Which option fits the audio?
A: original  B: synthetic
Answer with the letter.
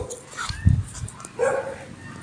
A